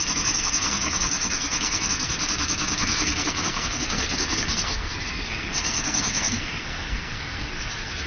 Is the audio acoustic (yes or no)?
no